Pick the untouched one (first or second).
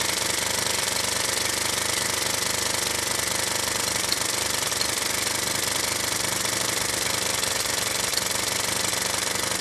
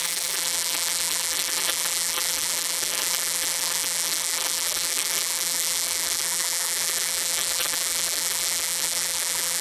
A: first